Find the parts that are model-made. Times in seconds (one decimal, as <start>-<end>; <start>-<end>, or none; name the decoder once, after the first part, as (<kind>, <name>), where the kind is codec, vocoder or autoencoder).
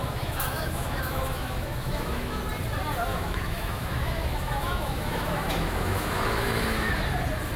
0.0-2.4 (autoencoder, DAC-VAE); 3.1-6.9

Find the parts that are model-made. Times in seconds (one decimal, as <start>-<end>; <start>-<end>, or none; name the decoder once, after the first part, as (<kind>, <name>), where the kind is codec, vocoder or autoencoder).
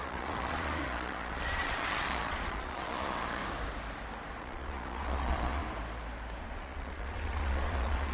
0.0-3.4 (vocoder, Vocos); 4.4-5.6; 6.4-8.1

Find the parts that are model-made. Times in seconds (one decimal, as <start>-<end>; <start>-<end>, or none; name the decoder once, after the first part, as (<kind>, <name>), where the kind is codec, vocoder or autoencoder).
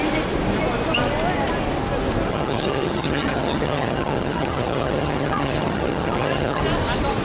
2.3-6.6 (vocoder, HiFi-GAN)